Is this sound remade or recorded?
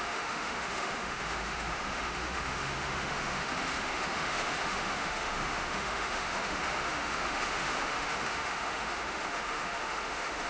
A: remade